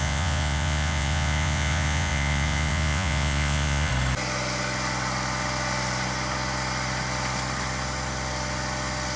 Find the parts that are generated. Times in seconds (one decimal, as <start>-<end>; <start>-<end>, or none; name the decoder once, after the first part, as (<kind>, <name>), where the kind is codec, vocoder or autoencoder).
0.0-3.9 (vocoder, Vocos)